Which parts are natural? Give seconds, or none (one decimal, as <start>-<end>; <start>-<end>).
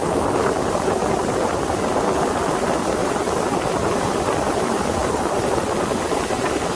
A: 0.0-3.0; 3.9-5.0; 5.6-6.8